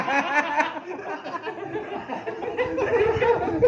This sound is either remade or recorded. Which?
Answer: recorded